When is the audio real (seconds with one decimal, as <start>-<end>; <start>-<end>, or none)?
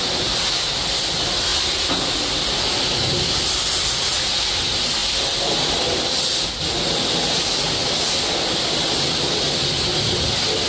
0.0-10.7